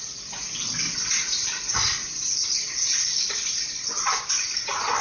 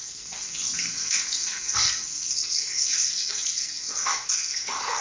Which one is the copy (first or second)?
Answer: second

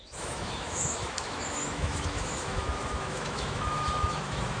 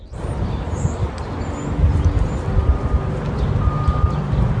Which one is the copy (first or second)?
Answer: first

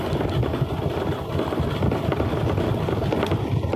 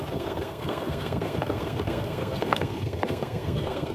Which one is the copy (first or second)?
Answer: second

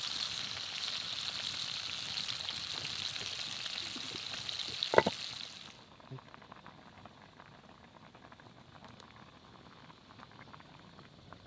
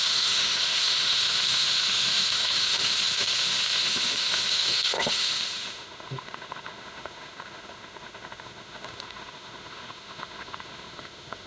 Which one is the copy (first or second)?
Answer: second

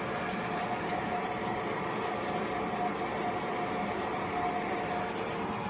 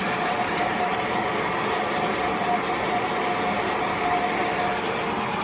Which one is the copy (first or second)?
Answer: second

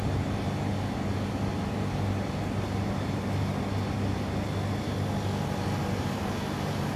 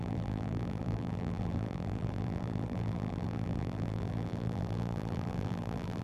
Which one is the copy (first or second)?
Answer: second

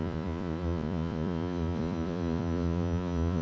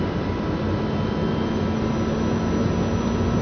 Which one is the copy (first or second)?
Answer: first